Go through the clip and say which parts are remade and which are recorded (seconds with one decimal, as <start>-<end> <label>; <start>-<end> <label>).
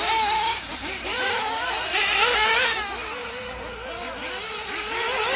0.0-0.7 recorded; 0.7-1.9 remade; 1.9-5.4 recorded